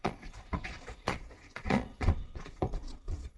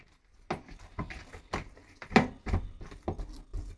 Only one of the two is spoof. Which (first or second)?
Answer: first